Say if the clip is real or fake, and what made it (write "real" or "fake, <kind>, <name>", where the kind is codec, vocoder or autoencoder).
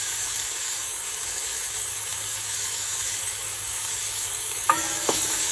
fake, codec, DAC